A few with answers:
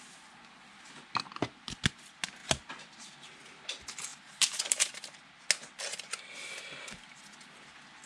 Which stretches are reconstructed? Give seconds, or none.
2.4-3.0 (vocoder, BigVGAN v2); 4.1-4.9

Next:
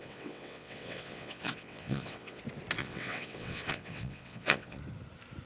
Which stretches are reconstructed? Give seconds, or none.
0.0-2.4 (vocoder, WaveNeXt); 2.8-4.8

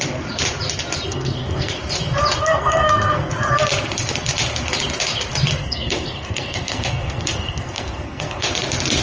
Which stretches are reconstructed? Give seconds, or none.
1.1-1.7 (codec, SNAC); 2.4-3.3; 5.6-8.5

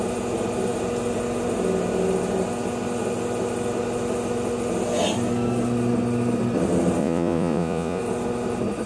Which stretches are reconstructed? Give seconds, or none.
7.0-8.0 (vocoder, Vocos)

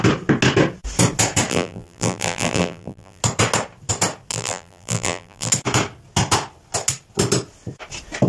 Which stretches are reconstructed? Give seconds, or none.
1.5-3.2 (vocoder, BigVGAN v2); 4.3-5.5

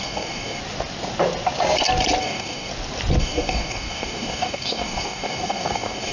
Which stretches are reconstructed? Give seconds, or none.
0.0-0.6 (codec, DAC); 2.2-2.7; 3.2-6.1

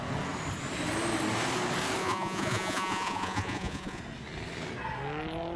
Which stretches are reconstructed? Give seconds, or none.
2.0-4.0 (vocoder, Vocos)

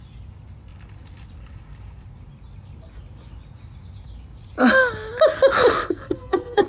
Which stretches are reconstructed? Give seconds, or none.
5.8-6.7 (codec, SNAC)